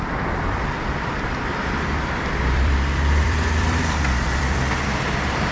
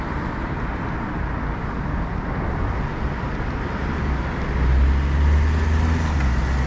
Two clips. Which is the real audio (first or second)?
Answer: second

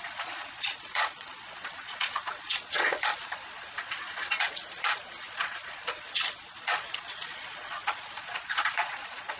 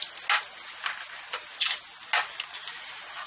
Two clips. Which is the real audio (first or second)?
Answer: second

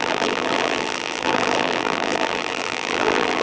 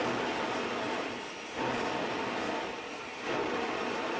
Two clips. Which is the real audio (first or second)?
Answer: second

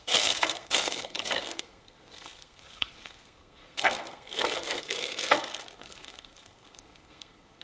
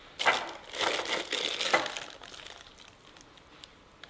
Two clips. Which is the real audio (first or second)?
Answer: second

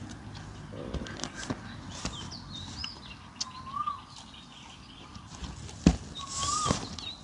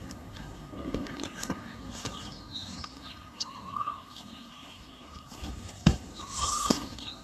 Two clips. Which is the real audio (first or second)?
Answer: first